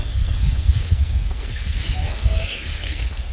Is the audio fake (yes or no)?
yes